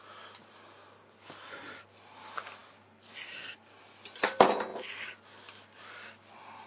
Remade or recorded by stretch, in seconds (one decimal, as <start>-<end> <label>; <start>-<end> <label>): 0.0-6.7 recorded